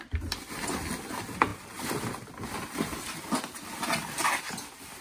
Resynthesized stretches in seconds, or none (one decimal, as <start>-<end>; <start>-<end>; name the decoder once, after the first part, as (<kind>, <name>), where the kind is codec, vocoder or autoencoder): none